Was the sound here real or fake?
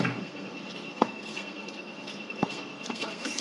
fake